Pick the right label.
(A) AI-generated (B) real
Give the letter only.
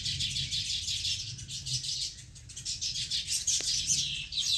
B